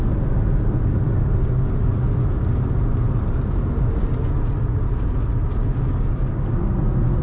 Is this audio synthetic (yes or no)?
no